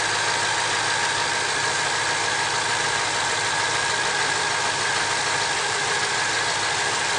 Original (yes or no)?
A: yes